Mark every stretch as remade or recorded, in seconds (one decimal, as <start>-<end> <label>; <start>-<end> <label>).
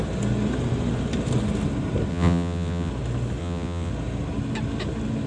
0.0-2.1 recorded; 2.1-2.9 remade; 2.9-3.4 recorded; 3.4-3.9 remade; 3.9-5.3 recorded